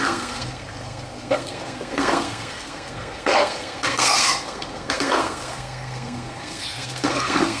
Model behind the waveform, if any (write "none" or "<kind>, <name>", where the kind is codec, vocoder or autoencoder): codec, SNAC